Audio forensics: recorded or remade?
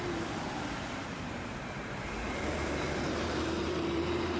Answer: remade